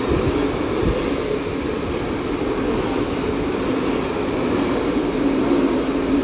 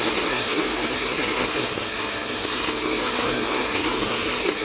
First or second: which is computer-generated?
second